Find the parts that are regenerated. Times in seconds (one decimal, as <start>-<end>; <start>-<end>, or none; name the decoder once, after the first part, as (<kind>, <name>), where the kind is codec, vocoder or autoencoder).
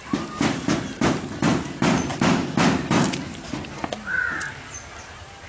none